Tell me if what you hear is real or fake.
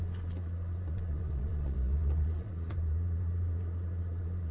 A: fake